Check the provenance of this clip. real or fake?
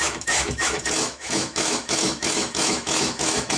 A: fake